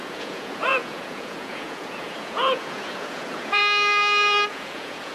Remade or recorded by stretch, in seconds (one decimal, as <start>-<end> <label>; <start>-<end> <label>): 0.0-3.6 remade; 3.6-4.5 recorded; 4.5-5.1 remade

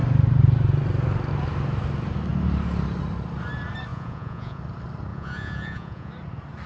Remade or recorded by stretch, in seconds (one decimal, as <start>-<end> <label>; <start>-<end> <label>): 0.0-3.9 recorded; 3.9-4.6 remade; 4.6-5.1 recorded; 5.1-6.1 remade; 6.1-6.7 recorded